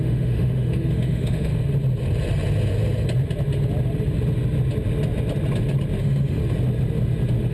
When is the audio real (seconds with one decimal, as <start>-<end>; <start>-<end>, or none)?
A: 1.5-6.0; 6.4-7.5